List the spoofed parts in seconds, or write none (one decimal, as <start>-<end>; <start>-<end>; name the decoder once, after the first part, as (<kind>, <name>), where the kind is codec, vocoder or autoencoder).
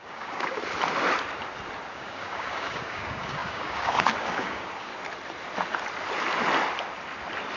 0.0-0.6 (codec, DAC); 1.9-4.9